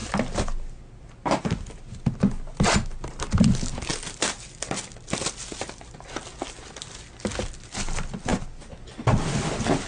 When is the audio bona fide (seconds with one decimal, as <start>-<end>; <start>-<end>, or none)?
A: 0.0-9.9